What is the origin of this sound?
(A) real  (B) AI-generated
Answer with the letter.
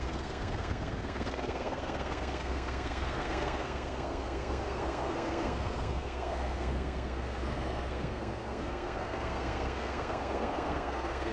B